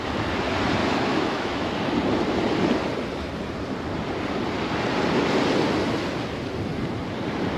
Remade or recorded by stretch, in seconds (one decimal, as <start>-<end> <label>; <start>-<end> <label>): 0.0-0.8 recorded; 0.8-1.9 remade; 1.9-7.6 recorded